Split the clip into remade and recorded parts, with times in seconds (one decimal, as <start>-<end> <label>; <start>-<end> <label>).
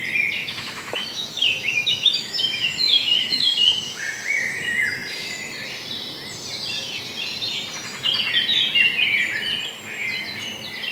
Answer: 0.0-0.4 recorded; 0.4-4.0 remade; 4.0-10.9 recorded